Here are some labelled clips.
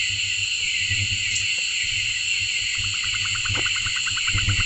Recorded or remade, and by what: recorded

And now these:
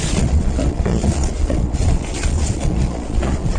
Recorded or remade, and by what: remade, vocoder, Vocos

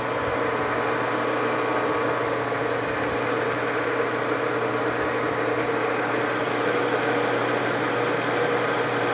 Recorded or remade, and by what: recorded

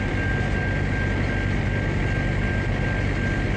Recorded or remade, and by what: recorded